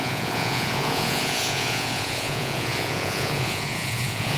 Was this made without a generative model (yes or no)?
no